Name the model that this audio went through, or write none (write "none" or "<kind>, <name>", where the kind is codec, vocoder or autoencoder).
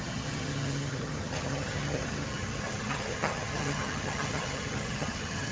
vocoder, HiFi-GAN